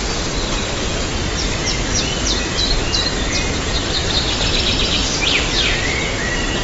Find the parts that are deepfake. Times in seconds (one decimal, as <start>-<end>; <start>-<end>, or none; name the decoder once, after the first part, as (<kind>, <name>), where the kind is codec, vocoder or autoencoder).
none